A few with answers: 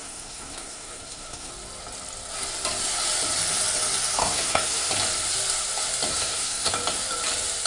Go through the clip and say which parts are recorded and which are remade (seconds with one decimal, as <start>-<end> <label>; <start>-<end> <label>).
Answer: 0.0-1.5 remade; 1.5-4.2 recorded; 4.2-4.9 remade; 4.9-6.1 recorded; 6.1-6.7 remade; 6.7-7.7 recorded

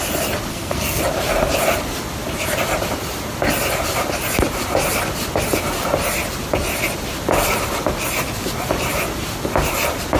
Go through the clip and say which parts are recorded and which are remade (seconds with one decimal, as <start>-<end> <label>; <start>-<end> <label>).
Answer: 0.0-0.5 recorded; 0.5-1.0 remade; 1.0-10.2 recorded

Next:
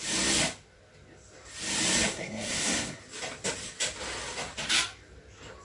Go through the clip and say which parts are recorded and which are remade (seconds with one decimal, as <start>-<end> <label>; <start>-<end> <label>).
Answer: 0.0-2.1 recorded; 2.1-3.0 remade; 3.0-5.6 recorded